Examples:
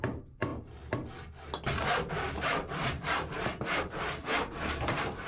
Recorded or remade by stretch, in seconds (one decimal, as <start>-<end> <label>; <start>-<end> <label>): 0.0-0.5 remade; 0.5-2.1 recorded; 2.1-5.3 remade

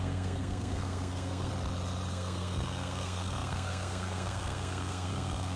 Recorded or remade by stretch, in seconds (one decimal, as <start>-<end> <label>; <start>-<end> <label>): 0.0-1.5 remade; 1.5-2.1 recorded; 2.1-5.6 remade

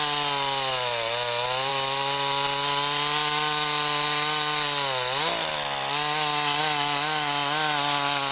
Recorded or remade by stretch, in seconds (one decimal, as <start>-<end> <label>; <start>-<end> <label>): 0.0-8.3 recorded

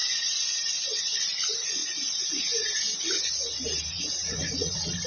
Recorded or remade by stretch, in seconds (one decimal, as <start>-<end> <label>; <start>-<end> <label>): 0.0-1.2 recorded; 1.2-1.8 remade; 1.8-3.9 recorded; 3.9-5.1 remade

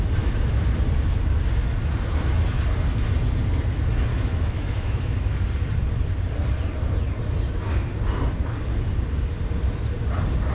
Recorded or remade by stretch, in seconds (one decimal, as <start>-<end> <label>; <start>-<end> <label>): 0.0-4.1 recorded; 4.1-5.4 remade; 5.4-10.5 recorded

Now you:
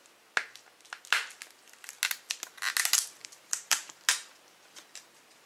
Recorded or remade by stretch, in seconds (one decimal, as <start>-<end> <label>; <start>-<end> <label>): 0.0-3.2 recorded; 3.2-4.0 remade; 4.0-5.5 recorded